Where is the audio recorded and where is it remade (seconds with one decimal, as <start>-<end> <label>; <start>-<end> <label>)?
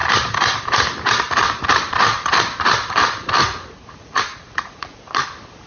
0.0-3.4 recorded; 3.4-5.3 remade; 5.3-5.7 recorded